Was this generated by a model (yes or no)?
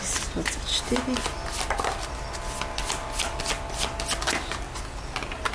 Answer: no